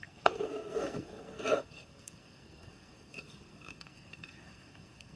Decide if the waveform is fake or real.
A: fake